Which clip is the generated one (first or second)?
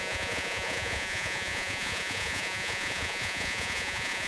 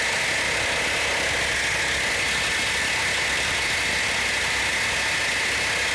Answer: first